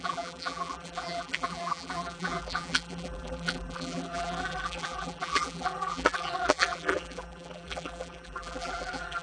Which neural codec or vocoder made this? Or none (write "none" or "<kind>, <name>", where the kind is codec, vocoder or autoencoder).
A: vocoder, BigVGAN v2